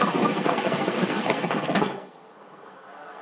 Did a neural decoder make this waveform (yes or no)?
yes